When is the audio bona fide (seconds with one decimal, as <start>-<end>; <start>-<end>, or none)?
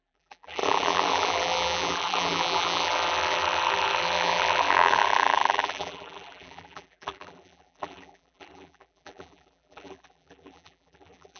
none